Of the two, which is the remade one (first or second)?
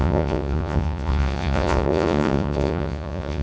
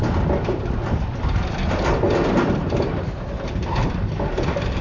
first